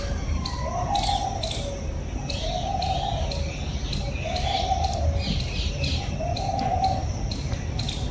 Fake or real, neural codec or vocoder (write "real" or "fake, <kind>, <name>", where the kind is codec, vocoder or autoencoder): real